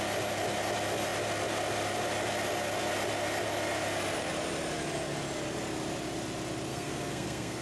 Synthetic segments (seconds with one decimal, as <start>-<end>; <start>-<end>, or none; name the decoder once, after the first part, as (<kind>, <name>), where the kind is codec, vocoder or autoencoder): 6.7-7.6 (codec, SNAC)